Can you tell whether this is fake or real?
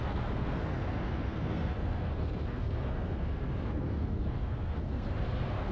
fake